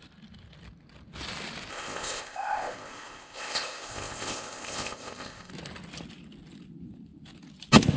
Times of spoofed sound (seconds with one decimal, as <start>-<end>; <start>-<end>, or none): 1.7-5.5